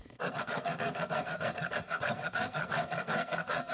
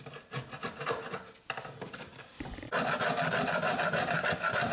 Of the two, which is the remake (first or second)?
first